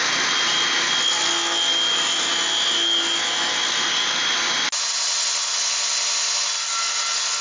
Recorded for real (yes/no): yes